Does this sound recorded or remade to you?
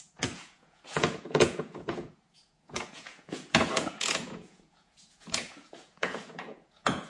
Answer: remade